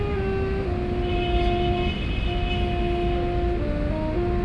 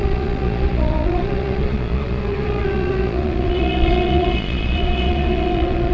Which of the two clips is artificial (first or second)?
second